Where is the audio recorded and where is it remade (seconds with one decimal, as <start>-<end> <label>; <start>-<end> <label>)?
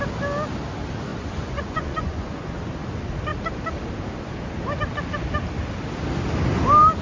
0.0-1.1 recorded; 1.1-2.6 remade; 2.6-7.0 recorded